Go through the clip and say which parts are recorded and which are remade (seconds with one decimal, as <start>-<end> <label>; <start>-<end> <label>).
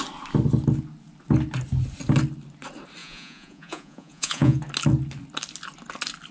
0.0-3.0 recorded; 3.0-4.6 remade; 4.6-6.3 recorded